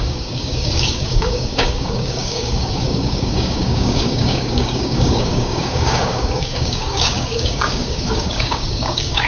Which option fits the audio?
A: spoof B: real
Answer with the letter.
A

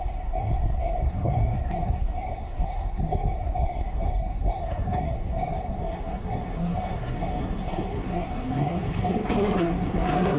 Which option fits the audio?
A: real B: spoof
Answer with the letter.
B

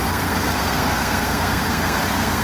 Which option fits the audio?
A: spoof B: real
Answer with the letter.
A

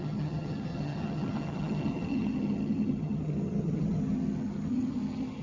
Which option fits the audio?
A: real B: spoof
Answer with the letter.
B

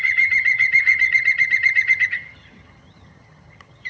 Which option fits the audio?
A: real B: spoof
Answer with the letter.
B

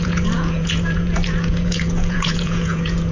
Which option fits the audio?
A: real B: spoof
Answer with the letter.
B